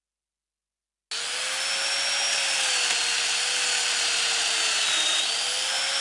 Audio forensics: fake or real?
real